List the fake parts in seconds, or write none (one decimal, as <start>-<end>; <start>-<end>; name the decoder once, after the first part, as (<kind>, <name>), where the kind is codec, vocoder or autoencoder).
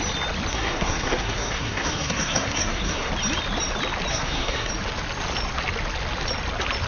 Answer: 0.5-3.1 (codec, SNAC); 4.1-4.7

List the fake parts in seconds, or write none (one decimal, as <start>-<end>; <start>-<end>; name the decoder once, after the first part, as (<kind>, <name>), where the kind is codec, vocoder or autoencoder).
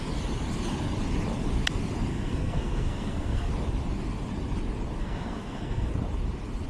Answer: 2.1-3.5 (codec, SNAC); 5.0-5.9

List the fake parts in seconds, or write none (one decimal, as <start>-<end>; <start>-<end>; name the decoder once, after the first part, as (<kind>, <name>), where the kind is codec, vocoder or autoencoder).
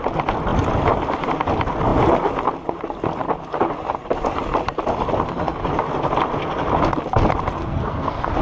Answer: 7.6-8.4 (codec, SNAC)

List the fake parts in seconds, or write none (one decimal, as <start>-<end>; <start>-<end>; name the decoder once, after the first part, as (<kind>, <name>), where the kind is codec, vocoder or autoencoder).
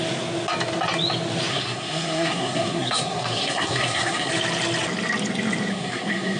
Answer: 1.5-4.3 (codec, SNAC); 5.7-6.4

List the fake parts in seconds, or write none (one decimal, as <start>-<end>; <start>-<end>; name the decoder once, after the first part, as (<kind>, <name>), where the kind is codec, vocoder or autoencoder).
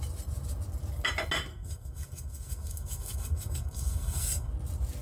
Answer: 1.5-4.5 (codec, SNAC)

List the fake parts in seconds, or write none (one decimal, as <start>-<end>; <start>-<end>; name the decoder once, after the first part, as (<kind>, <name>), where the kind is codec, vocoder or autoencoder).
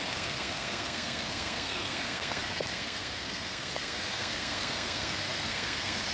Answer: 0.0-6.1 (codec, SNAC)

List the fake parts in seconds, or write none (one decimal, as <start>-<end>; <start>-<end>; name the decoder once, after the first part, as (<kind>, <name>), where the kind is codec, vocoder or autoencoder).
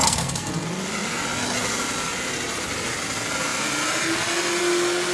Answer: 0.0-0.5 (codec, SNAC)